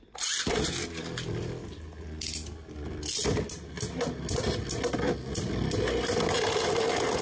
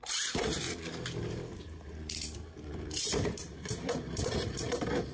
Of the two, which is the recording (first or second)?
first